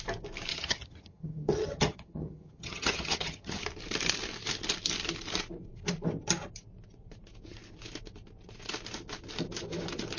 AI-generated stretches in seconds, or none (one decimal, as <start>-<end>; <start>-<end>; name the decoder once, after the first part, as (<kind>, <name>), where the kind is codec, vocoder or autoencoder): 0.5-3.6 (vocoder, HiFi-GAN)

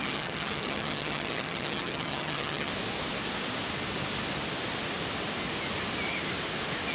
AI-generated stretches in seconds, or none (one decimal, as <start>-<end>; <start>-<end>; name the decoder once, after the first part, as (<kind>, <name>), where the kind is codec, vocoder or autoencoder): 0.0-2.7 (vocoder, HiFi-GAN)

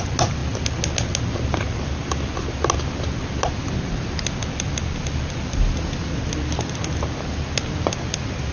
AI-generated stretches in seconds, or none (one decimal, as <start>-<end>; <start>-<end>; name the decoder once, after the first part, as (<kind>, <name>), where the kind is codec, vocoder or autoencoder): none

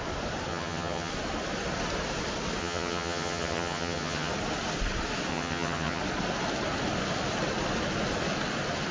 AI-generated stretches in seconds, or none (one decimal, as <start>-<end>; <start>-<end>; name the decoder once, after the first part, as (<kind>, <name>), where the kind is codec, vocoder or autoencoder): 0.5-1.1 (vocoder, HiFi-GAN); 2.6-4.3; 5.3-6.0

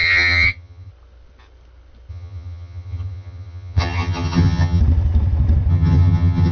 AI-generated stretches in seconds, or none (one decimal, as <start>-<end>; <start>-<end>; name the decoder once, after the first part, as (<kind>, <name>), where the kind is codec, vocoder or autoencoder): 0.0-0.9 (vocoder, HiFi-GAN); 2.1-4.8; 5.7-6.5

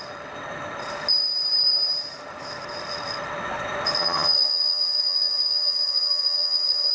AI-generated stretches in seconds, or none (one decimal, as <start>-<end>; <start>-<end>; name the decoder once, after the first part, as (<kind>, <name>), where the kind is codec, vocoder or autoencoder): 4.0-6.9 (vocoder, HiFi-GAN)